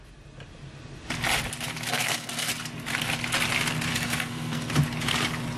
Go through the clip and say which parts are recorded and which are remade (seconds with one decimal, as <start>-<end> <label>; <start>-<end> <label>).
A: 0.0-1.9 recorded; 1.9-2.5 remade; 2.5-3.9 recorded; 3.9-4.7 remade; 4.7-5.6 recorded